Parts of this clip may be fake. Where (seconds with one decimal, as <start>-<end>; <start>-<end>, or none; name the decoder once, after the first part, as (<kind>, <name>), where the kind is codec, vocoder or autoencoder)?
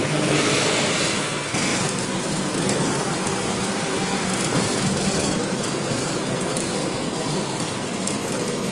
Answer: 0.0-8.7 (codec, SNAC)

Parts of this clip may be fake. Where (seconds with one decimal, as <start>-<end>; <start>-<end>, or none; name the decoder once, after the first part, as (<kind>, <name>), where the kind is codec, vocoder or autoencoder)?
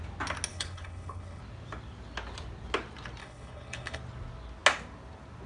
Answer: 0.5-1.4 (codec, HILCodec); 3.2-4.0